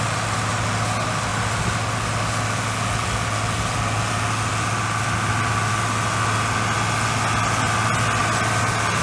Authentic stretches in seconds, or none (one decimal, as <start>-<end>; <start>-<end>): 0.0-9.0